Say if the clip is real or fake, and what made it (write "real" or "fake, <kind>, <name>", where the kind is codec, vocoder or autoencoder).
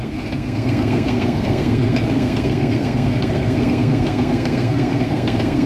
fake, codec, SNAC